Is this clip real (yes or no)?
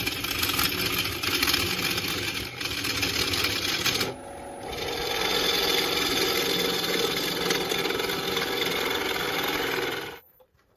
yes